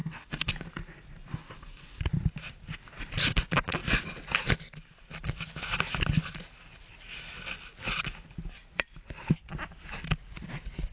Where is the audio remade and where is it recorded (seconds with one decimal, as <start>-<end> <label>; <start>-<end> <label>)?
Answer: 0.0-0.5 remade; 0.5-1.3 recorded; 1.3-2.0 remade; 2.0-10.9 recorded